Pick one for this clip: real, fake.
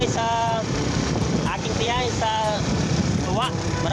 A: fake